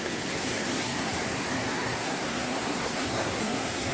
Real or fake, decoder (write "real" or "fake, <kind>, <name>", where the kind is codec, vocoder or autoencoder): fake, codec, SNAC